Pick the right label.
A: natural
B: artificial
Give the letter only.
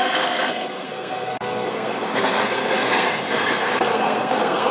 B